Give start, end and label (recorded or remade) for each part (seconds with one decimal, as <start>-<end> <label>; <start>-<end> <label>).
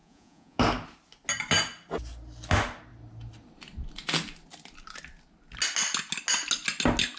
0.0-0.6 remade; 0.6-7.2 recorded